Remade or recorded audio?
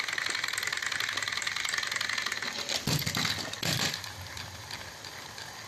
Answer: recorded